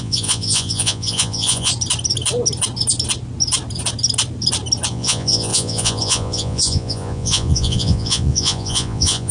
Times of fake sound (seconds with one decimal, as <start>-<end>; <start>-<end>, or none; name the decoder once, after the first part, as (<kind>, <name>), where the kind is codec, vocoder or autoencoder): 0.0-1.7 (vocoder, Vocos); 4.9-9.3